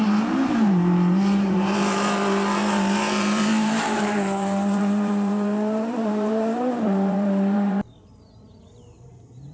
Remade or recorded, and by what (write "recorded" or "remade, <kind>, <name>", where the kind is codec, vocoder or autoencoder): remade, vocoder, BigVGAN v2